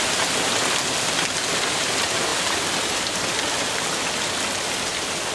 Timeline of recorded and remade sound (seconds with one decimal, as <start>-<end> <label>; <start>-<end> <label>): 0.0-5.3 recorded